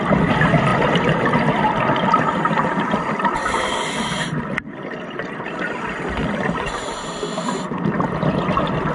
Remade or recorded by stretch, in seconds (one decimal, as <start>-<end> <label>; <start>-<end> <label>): 0.0-8.9 recorded